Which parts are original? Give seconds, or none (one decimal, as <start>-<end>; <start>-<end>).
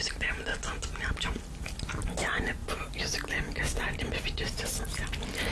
0.0-2.6; 4.0-5.5